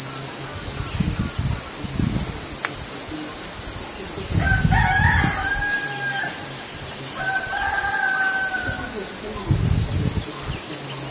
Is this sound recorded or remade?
recorded